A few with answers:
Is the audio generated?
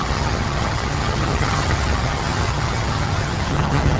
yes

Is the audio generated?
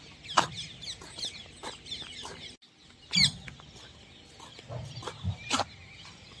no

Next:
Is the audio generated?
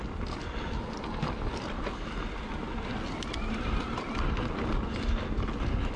no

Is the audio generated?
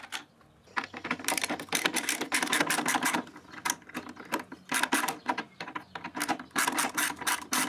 no